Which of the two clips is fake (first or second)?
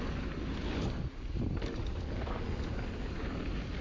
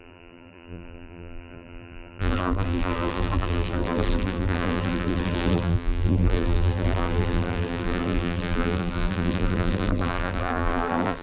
second